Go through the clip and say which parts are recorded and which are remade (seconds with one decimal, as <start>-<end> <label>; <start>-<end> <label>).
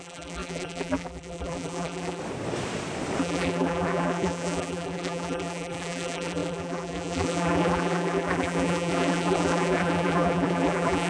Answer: 0.0-2.2 remade; 2.2-3.2 recorded; 3.2-11.1 remade